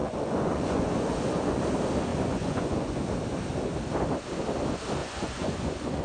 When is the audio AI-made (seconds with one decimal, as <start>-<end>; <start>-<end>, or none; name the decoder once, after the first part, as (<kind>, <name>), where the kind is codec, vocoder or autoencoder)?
0.0-1.6 (vocoder, Vocos); 2.1-3.0; 5.0-6.0